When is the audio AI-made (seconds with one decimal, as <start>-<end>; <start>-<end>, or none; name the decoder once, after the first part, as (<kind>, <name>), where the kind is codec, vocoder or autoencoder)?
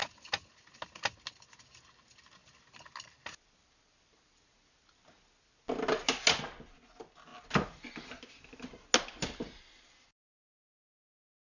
none